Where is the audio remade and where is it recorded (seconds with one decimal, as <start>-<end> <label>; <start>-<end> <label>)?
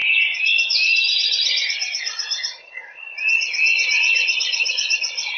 0.0-3.2 remade; 3.2-5.4 recorded